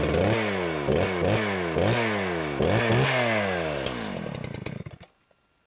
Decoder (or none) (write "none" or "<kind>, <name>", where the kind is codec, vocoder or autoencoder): none